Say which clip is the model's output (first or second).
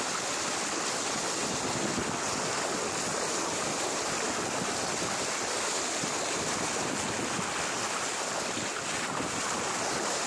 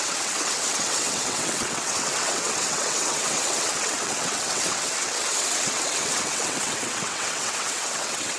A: second